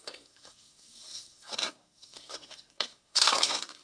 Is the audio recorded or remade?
remade